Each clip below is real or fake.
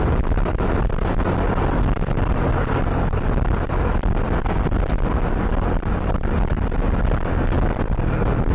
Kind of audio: real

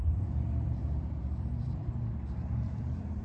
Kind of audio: fake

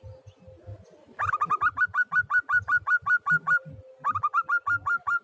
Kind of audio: real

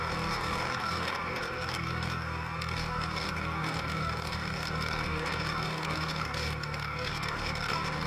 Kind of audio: fake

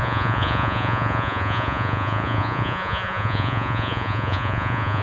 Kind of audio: fake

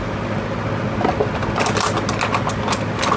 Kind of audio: real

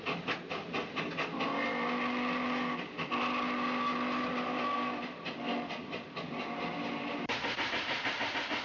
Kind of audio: real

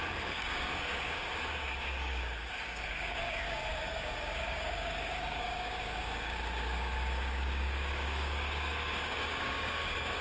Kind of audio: fake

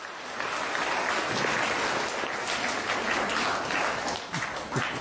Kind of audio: real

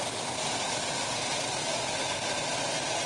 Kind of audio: real